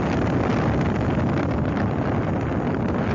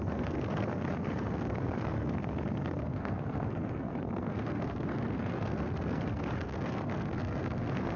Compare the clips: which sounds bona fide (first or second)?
first